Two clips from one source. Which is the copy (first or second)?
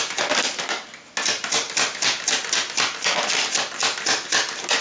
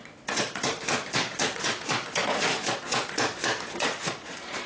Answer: second